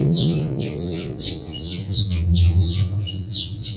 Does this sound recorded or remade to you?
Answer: remade